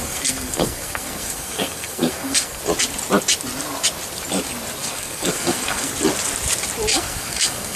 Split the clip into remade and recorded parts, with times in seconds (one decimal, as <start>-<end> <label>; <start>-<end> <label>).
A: 0.0-2.6 remade; 2.6-4.8 recorded; 4.8-5.9 remade; 5.9-6.9 recorded; 6.9-7.8 remade